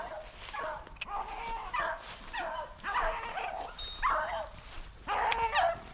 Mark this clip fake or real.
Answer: real